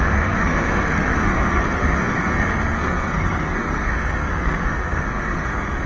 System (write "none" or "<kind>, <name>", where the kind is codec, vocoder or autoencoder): codec, SNAC